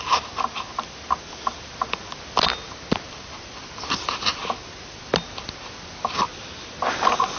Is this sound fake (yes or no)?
no